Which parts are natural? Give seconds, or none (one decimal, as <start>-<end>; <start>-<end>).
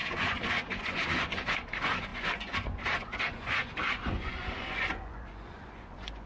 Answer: none